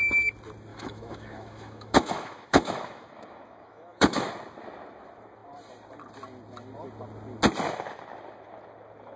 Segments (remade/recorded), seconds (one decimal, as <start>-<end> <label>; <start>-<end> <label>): 0.0-0.7 recorded; 0.7-4.3 remade; 4.3-9.2 recorded